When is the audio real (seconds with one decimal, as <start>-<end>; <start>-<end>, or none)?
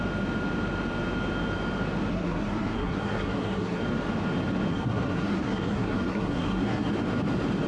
0.0-2.1; 3.8-4.7; 6.9-7.7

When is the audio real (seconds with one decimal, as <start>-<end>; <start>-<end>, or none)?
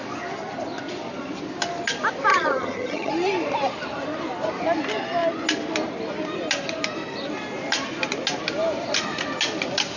0.0-2.3; 3.1-10.0